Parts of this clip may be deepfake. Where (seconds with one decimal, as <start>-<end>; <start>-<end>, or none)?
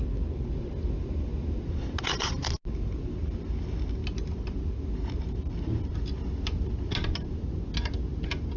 none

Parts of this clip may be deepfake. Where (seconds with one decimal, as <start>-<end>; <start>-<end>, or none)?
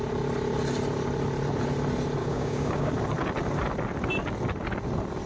2.2-2.9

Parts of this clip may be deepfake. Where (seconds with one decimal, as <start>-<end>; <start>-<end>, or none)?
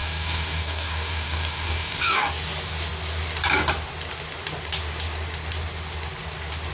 0.0-2.3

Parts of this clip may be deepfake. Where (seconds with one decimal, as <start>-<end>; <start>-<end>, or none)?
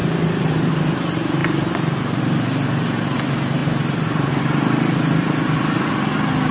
none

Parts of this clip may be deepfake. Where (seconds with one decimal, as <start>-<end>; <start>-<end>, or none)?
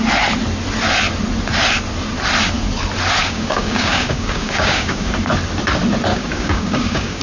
3.2-5.1; 6.1-7.2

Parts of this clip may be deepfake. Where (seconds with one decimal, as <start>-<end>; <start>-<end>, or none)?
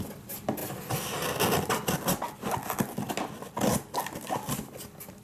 none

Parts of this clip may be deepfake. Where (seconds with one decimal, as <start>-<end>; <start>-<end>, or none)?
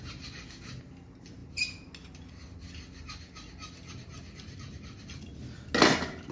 none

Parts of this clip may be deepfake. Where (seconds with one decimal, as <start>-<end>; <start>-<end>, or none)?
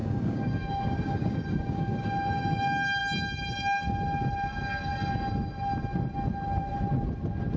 0.0-2.6